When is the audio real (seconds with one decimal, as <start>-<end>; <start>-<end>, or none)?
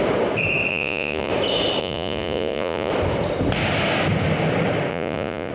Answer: 0.0-0.7; 1.3-1.8; 2.9-4.9